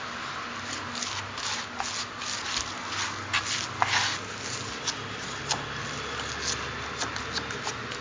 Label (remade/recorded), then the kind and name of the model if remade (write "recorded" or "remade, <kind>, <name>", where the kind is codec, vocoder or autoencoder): recorded